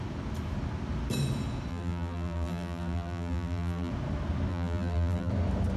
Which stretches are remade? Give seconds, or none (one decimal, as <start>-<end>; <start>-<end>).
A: 1.7-3.9; 4.5-5.3